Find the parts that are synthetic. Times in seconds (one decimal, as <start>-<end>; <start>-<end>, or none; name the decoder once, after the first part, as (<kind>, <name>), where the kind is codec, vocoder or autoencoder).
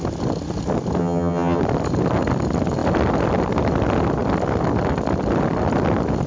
1.0-1.6 (vocoder, HiFi-GAN)